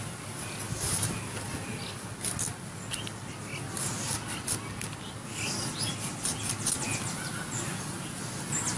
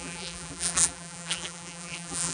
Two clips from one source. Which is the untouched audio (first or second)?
first